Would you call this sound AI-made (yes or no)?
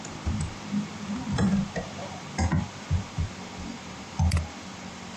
yes